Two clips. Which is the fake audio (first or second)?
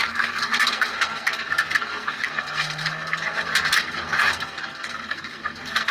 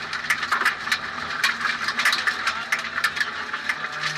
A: first